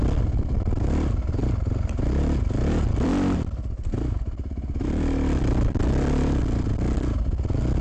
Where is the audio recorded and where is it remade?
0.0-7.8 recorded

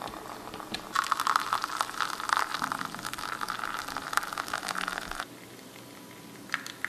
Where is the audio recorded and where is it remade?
0.0-6.9 recorded

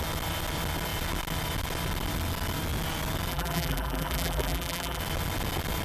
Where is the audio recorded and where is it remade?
0.0-3.3 recorded; 3.3-5.0 remade; 5.0-5.8 recorded

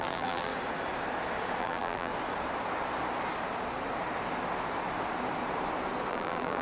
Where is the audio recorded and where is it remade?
0.0-0.5 remade; 0.5-1.6 recorded; 1.6-2.1 remade; 2.1-6.1 recorded; 6.1-6.6 remade

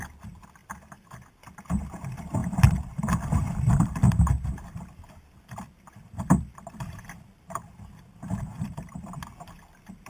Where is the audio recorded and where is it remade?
0.0-0.6 recorded; 0.6-1.1 remade; 1.1-8.5 recorded; 8.5-9.0 remade; 9.0-10.1 recorded

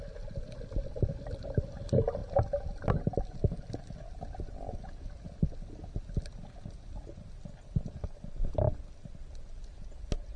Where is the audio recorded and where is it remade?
0.0-10.4 recorded